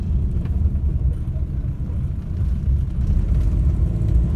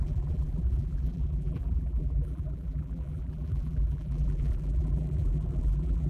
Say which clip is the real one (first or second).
first